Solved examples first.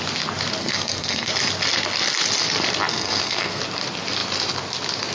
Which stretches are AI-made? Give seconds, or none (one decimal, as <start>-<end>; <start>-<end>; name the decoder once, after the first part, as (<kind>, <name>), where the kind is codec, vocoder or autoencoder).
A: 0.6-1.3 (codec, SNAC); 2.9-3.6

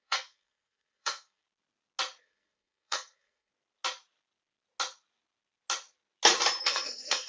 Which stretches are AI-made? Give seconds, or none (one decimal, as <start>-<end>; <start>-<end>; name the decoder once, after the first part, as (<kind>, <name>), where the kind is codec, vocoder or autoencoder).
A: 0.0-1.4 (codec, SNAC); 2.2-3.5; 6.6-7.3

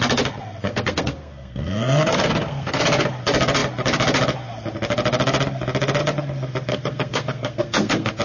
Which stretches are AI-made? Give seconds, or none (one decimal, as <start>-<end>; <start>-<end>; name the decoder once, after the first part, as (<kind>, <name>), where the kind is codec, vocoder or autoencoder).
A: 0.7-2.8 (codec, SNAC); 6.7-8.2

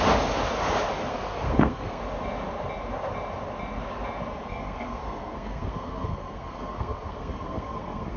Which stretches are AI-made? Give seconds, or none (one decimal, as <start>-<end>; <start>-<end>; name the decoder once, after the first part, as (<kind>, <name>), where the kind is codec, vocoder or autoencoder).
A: 1.1-2.0 (codec, SNAC); 4.5-8.2

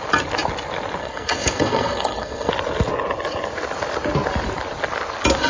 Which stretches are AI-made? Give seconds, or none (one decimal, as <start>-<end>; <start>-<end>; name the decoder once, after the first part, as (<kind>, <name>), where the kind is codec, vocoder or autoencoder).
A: 1.0-2.5 (codec, SNAC)

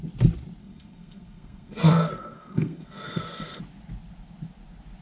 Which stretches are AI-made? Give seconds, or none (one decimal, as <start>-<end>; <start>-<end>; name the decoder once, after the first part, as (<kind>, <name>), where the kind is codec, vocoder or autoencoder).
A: 0.6-3.6 (codec, SNAC)